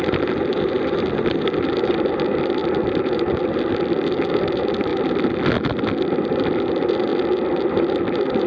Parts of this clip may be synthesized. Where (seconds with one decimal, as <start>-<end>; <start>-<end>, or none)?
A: 0.0-4.9; 6.0-7.1; 7.9-8.5